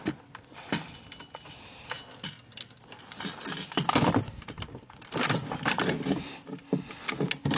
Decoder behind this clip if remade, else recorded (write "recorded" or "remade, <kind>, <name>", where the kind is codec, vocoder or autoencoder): recorded